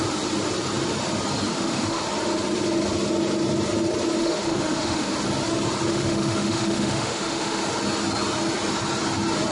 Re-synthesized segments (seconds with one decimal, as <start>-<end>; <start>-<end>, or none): 1.5-2.0; 4.2-5.1; 5.9-7.6